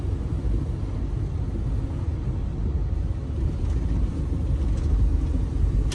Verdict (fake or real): real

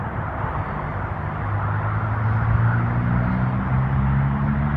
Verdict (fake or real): real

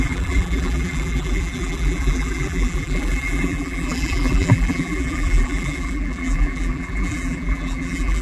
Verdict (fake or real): fake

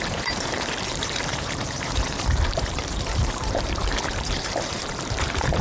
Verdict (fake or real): fake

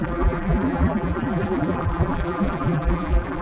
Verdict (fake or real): fake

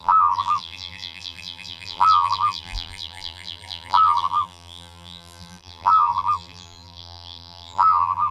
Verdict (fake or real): fake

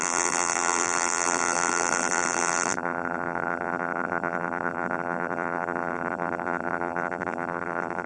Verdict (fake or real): fake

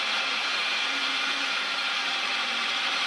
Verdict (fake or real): fake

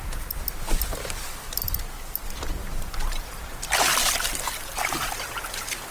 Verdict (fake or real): real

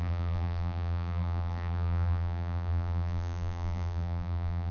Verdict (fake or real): fake